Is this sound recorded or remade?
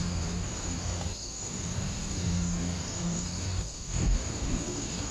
remade